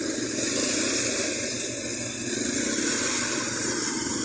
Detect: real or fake real